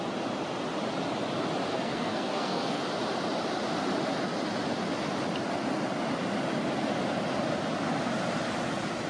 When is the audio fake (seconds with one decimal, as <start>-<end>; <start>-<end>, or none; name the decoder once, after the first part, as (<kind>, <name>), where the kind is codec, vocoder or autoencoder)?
1.7-2.8 (codec, SNAC)

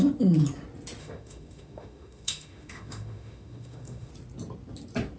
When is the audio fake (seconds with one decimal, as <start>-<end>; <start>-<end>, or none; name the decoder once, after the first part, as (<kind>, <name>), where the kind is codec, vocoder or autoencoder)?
1.0-4.1 (autoencoder, DAC-VAE)

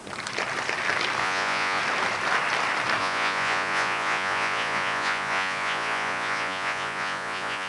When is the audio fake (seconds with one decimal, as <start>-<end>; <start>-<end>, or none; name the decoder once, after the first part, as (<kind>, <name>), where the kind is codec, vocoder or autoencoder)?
1.2-1.8 (vocoder, Vocos); 3.0-7.7

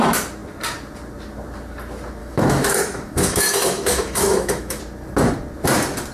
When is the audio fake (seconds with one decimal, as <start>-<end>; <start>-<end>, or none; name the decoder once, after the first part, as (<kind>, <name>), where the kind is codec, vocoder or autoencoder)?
2.2-4.8 (autoencoder, DAC-VAE)

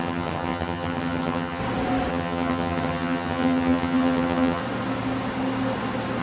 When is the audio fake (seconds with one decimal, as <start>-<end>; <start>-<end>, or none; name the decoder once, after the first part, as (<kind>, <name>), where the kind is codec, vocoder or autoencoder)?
0.0-1.6 (vocoder, HiFi-GAN); 2.1-4.6

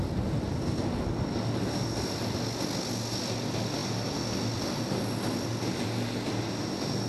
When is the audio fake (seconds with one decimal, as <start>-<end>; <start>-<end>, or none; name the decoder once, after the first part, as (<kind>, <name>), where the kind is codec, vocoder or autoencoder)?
none

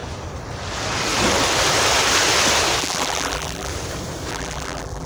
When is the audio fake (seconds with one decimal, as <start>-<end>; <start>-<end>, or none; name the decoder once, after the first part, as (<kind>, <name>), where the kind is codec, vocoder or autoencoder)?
2.8-3.7 (vocoder, BigVGAN v2); 4.3-5.1

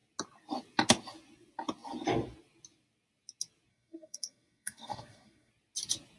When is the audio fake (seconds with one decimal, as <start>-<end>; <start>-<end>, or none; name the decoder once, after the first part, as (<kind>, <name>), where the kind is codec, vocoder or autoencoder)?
3.7-5.5 (codec, SNAC)